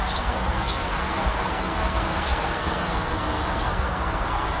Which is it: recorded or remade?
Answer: remade